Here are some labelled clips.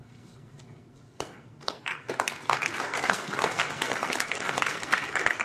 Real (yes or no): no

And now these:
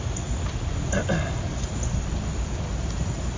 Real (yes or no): yes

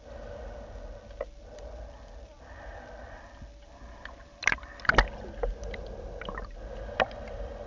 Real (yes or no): yes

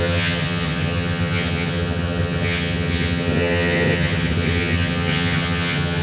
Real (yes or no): no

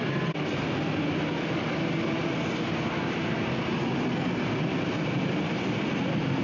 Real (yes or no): yes